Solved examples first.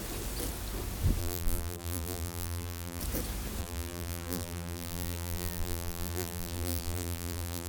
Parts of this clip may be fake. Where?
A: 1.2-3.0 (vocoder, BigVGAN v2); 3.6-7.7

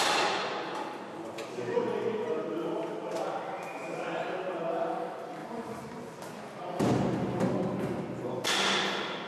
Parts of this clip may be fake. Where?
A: 5.4-6.2 (vocoder, BigVGAN v2)

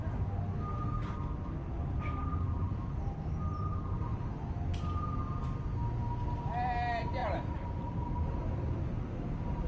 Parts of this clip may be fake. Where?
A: 2.3-3.2 (vocoder, BigVGAN v2); 3.7-4.4; 7.2-9.7

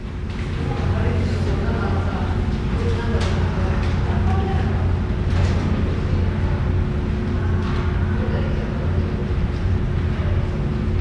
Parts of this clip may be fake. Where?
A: 9.2-9.7 (vocoder, BigVGAN v2)

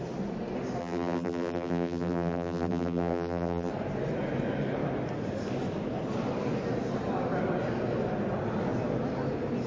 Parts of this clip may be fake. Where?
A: 0.8-3.7 (vocoder, BigVGAN v2)

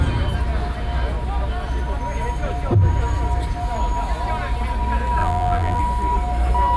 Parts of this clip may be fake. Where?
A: 5.2-5.8 (vocoder, BigVGAN v2)